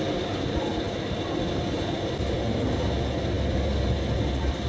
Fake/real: real